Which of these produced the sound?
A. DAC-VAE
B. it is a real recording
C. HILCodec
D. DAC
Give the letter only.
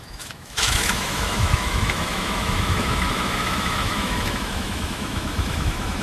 A